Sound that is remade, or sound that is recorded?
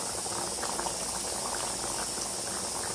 recorded